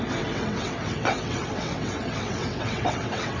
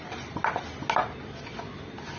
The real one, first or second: second